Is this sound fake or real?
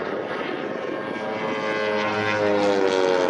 real